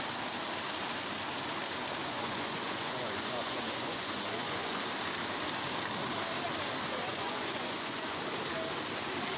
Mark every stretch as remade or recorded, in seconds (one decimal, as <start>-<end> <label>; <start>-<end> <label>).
0.0-2.0 recorded; 2.0-4.8 remade; 4.8-7.1 recorded; 7.1-8.2 remade; 8.2-9.4 recorded